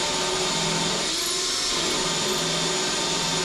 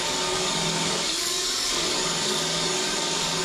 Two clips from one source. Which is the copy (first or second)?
second